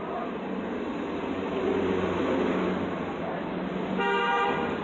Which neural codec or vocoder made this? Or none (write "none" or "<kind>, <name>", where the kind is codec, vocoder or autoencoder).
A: none